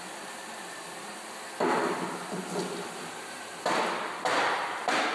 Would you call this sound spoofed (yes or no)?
no